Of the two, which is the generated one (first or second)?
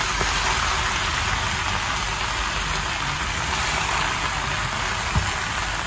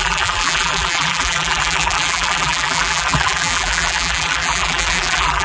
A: second